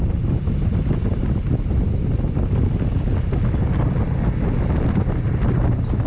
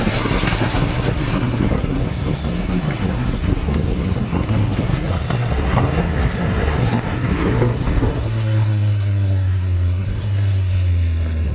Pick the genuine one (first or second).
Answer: first